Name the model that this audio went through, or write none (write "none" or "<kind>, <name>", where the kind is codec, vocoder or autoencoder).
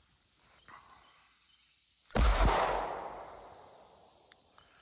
none